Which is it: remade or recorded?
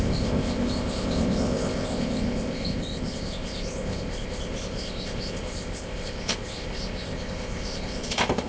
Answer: remade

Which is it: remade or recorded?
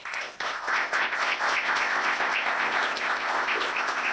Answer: remade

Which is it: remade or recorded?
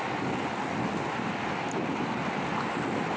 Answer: recorded